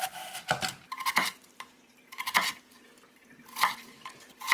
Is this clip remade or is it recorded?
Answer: recorded